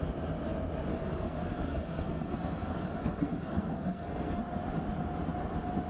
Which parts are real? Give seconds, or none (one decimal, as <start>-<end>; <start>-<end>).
0.0-0.9; 4.4-5.9